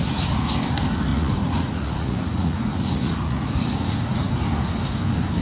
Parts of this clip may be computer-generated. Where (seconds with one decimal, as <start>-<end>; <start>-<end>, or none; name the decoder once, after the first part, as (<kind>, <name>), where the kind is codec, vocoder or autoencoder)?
1.1-4.3 (vocoder, Vocos)